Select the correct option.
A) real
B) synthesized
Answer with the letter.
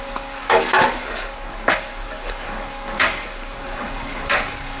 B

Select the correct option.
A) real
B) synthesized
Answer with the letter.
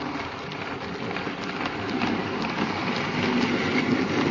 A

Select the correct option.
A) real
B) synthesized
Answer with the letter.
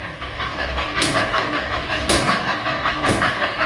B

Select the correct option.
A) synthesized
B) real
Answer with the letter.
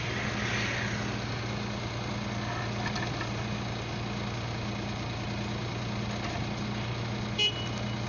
B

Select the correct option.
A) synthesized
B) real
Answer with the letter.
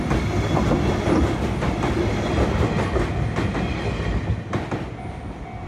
B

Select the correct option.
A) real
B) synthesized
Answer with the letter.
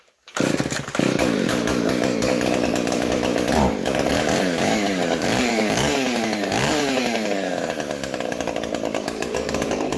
B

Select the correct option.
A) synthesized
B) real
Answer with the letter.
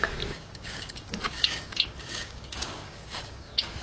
A